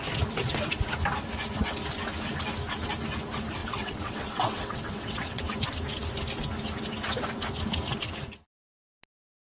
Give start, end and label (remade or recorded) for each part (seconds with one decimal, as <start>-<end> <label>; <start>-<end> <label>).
0.0-3.6 recorded; 3.6-5.4 remade; 5.4-9.5 recorded